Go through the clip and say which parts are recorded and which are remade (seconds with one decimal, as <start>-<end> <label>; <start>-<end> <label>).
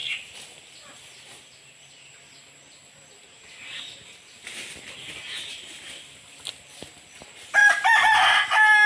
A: 0.0-8.9 recorded